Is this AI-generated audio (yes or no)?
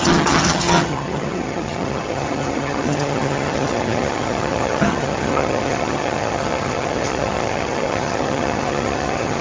yes